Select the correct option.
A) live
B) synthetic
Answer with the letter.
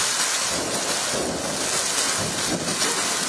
A